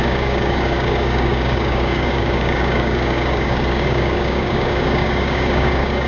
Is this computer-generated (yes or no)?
yes